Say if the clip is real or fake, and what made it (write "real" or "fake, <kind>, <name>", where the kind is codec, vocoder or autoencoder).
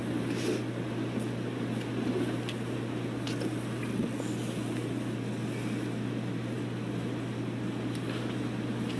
real